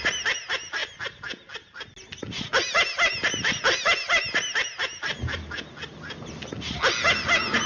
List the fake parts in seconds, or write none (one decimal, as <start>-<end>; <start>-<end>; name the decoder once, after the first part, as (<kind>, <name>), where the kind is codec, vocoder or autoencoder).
none